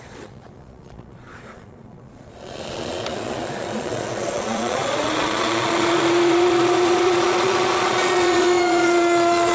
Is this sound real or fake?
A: fake